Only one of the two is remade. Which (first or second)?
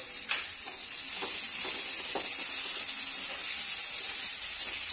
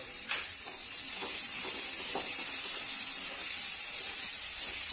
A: second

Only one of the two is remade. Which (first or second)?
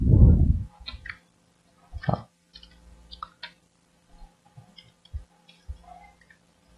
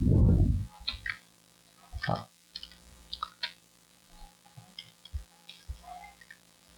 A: second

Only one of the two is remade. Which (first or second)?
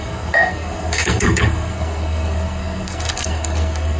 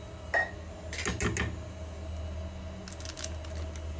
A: first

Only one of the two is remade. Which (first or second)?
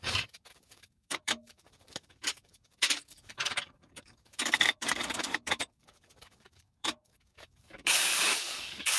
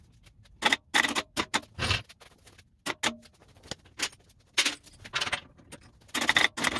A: first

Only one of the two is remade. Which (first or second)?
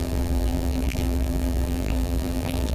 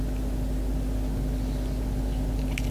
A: first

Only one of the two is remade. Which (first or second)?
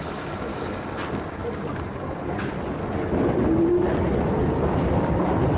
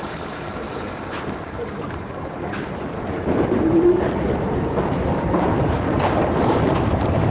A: second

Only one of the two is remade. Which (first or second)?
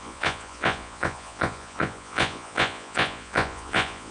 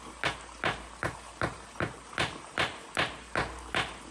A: first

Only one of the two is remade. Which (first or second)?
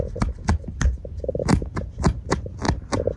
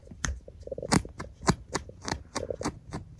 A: second